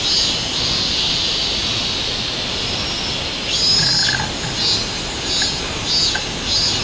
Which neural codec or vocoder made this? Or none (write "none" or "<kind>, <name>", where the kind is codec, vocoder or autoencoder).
none